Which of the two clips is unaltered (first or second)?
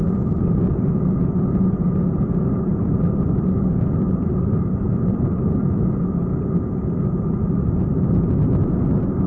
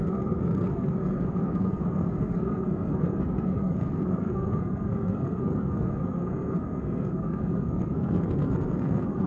first